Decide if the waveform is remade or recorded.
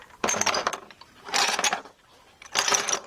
remade